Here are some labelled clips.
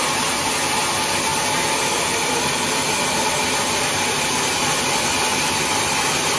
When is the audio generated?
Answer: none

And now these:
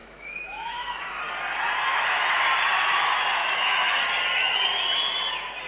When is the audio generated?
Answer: 0.0-1.2 (autoencoder, DAC-VAE); 1.9-2.4; 3.4-3.9

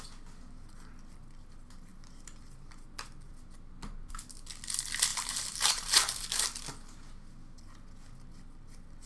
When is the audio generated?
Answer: 5.1-6.2 (vocoder, BigVGAN v2)

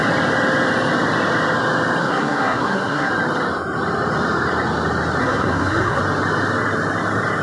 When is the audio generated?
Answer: 2.0-3.1 (codec, SNAC); 5.2-6.0

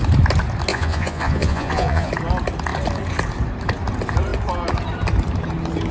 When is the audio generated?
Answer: 0.7-2.1 (vocoder, Vocos)

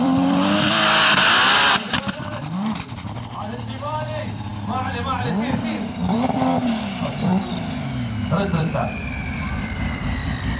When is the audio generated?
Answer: 0.0-4.5 (vocoder, BigVGAN v2); 5.9-7.3; 8.6-10.6

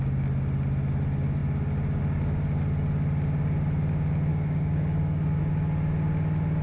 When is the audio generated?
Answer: 4.3-5.4 (codec, DAC)

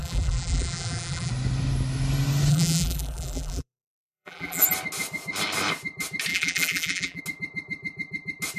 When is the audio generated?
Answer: 0.0-1.3 (vocoder, BigVGAN v2); 2.5-4.6; 6.3-7.2